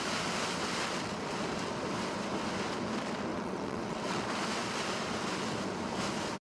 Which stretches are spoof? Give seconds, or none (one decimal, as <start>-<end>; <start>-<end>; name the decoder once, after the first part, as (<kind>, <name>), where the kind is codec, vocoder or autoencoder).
3.3-4.2 (vocoder, WaveNeXt)